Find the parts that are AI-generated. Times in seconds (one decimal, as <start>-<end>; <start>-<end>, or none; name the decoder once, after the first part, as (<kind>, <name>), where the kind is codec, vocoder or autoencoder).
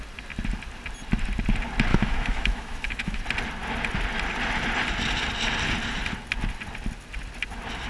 1.9-3.2 (autoencoder, DAC-VAE)